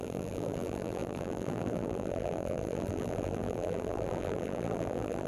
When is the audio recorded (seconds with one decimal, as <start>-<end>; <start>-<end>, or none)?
none